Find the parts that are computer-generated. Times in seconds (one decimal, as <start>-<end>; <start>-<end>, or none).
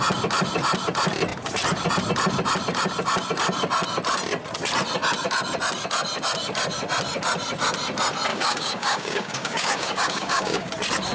8.3-10.7